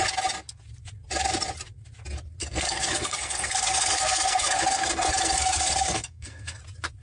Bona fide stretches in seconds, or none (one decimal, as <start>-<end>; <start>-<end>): 0.0-2.4; 6.6-7.0